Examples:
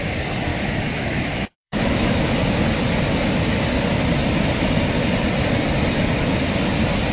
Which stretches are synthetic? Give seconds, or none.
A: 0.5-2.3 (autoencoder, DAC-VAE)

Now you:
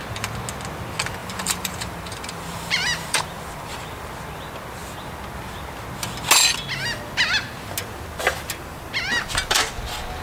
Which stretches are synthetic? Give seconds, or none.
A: 1.2-4.1 (vocoder, BigVGAN v2); 9.1-9.7

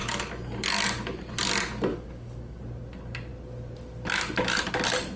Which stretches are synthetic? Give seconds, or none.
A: 1.9-2.6 (codec, DAC)

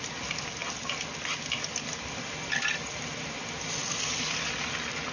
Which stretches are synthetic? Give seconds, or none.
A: none

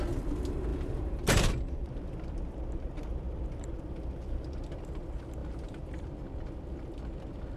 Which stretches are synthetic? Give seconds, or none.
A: 0.7-4.7 (vocoder, BigVGAN v2); 5.4-6.0

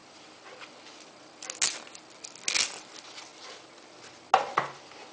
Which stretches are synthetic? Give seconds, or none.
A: none